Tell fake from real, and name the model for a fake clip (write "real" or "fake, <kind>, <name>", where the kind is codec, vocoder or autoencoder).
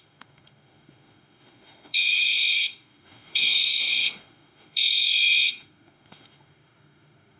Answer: fake, autoencoder, DAC-VAE